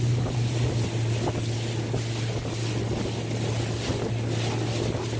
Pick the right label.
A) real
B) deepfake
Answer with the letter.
A